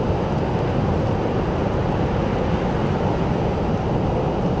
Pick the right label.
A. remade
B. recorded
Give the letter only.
B